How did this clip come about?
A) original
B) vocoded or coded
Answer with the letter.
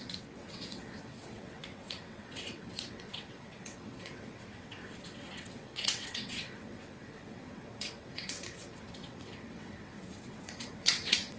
B